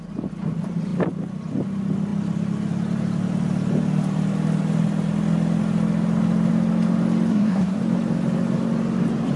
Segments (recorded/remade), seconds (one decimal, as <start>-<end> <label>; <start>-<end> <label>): 0.0-7.3 recorded; 7.3-7.8 remade; 7.8-9.4 recorded